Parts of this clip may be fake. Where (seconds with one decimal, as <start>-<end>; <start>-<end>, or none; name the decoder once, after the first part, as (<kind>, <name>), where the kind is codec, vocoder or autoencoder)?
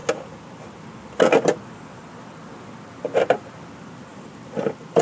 none